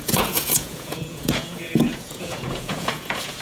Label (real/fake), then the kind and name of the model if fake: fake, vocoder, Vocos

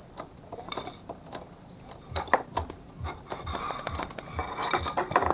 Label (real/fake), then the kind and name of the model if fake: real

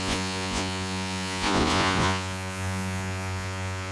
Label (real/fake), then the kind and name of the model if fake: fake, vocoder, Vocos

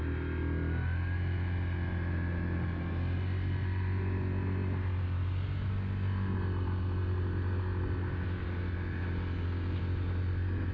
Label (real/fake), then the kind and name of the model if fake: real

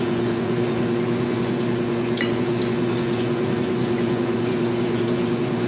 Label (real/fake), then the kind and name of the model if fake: fake, vocoder, Vocos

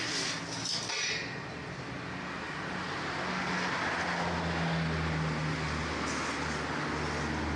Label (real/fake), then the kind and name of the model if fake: real